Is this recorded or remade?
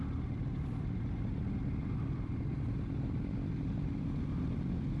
recorded